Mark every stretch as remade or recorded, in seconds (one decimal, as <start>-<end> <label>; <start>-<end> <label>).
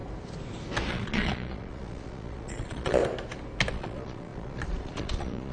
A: 0.0-0.9 recorded; 0.9-3.0 remade; 3.0-3.7 recorded; 3.7-5.5 remade